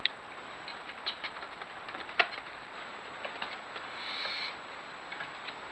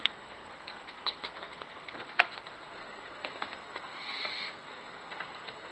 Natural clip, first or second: first